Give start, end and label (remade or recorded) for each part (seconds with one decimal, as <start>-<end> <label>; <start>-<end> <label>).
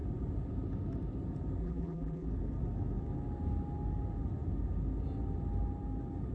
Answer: 0.0-1.6 recorded; 1.6-2.3 remade; 2.3-6.3 recorded